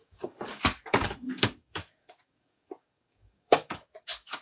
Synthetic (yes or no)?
yes